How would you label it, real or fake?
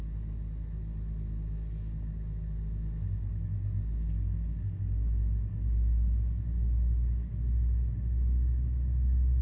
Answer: real